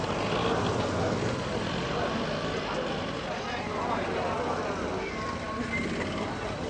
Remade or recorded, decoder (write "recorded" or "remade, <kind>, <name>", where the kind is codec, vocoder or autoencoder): recorded